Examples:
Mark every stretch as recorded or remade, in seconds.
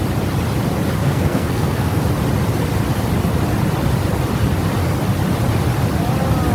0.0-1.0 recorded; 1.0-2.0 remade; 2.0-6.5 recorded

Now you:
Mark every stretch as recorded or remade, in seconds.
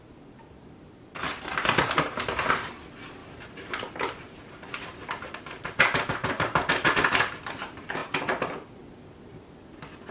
0.0-3.2 recorded; 3.2-6.9 remade; 6.9-10.1 recorded